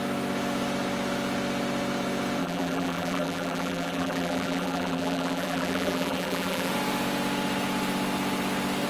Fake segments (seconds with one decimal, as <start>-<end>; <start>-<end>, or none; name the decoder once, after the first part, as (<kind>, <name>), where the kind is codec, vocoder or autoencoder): 2.4-6.7 (vocoder, BigVGAN v2)